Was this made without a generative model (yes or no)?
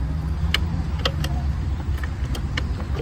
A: yes